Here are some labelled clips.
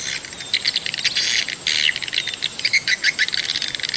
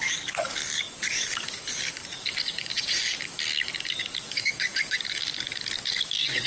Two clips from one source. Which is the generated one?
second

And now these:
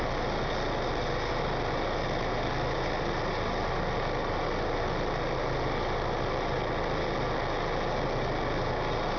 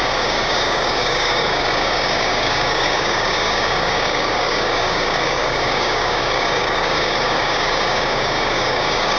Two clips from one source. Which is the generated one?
second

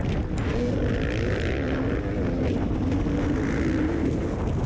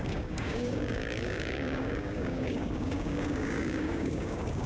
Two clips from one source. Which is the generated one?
second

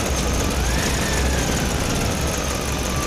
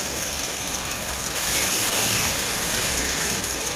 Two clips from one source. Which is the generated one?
second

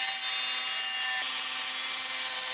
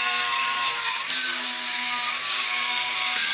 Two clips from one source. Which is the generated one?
second